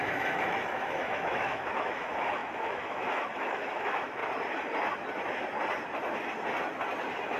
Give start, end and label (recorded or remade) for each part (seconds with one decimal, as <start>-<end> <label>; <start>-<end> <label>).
0.0-4.2 remade; 4.2-7.4 recorded